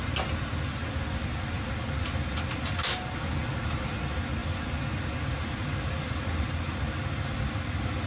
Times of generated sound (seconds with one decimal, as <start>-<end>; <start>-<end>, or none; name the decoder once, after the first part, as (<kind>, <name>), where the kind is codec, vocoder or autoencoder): none